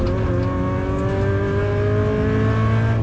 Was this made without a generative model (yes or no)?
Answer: yes